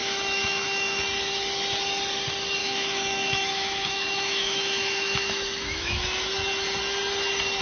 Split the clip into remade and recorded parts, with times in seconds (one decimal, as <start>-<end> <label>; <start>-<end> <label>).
0.0-1.0 remade; 1.0-2.6 recorded; 2.6-6.3 remade; 6.3-7.6 recorded